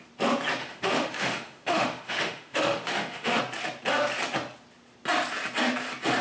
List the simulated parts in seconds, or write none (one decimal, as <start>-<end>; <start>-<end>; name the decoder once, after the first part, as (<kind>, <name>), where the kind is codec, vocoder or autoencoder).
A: 0.6-3.4 (autoencoder, DAC-VAE)